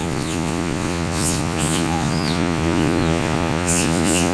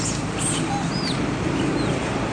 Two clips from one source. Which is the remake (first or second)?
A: first